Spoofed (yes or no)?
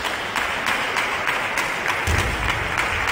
no